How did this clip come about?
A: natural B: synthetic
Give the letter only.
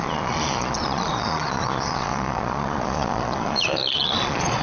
B